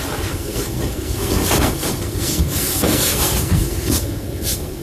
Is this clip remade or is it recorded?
remade